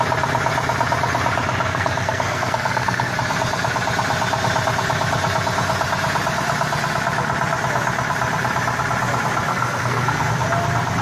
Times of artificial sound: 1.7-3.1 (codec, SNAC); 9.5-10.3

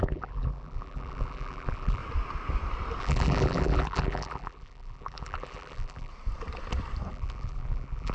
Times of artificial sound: 0.0-2.0 (vocoder, BigVGAN v2); 3.0-6.1; 7.1-8.1

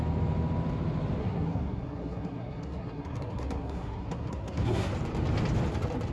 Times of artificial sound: 1.2-4.9 (codec, SNAC)

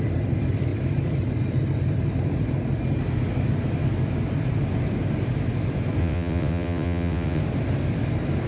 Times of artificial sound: 6.0-7.4 (vocoder, WaveNeXt)

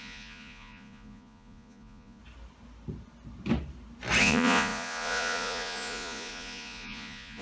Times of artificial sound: 0.0-2.2 (vocoder, Vocos); 4.2-7.4